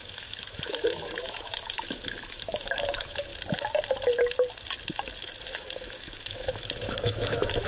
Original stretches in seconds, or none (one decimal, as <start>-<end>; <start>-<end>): 3.3-5.4